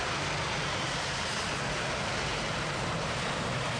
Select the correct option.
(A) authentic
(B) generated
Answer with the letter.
B